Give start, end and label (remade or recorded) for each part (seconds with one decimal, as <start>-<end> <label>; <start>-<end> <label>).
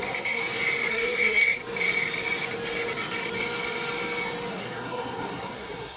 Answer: 0.0-0.4 remade; 0.4-0.9 recorded; 0.9-1.6 remade; 1.6-4.5 recorded; 4.5-6.0 remade